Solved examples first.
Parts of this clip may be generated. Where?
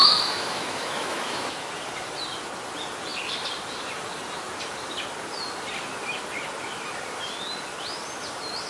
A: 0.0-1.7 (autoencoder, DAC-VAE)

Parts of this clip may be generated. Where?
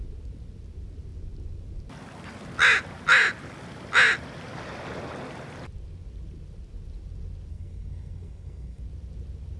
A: 7.5-8.8 (codec, SNAC)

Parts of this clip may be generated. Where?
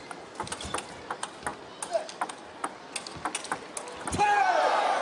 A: none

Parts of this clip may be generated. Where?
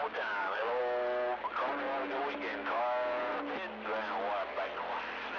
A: 0.0-0.8 (codec, DAC); 2.5-3.3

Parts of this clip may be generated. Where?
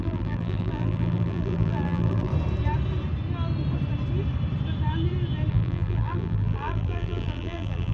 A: 0.0-2.3 (vocoder, BigVGAN v2); 5.5-7.9